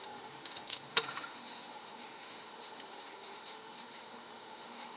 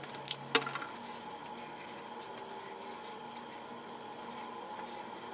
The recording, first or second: second